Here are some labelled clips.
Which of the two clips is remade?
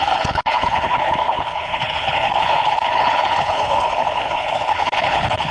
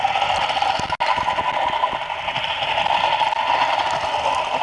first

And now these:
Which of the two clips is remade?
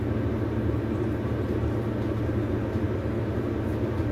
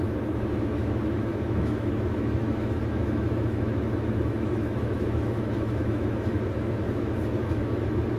second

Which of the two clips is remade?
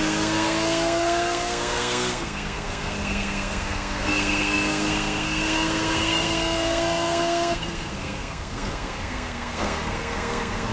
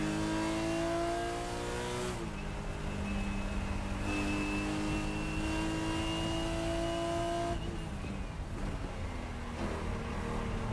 first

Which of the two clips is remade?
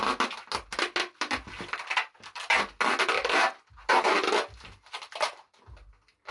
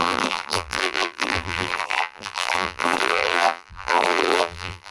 second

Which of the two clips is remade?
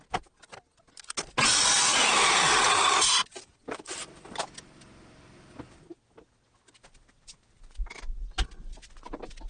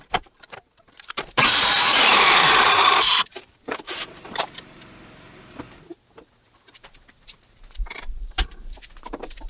second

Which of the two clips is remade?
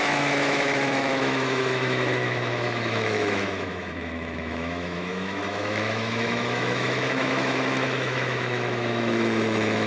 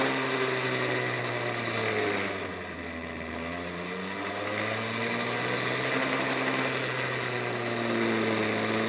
first